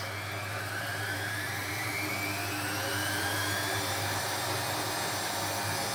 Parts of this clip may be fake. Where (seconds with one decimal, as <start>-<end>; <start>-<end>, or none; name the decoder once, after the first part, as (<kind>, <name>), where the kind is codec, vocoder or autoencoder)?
0.5-1.9 (vocoder, BigVGAN v2); 2.9-4.2